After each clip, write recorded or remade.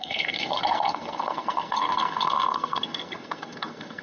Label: remade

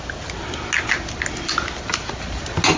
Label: recorded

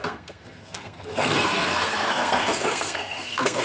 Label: remade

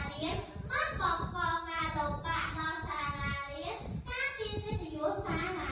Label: recorded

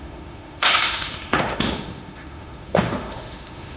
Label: remade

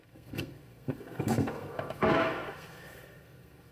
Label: remade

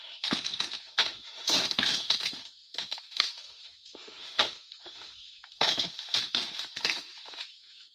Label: remade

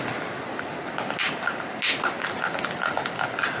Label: recorded